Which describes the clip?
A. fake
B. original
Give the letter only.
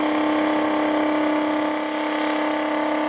B